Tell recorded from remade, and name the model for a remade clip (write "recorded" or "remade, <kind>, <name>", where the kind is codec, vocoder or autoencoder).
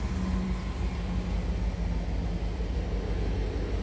recorded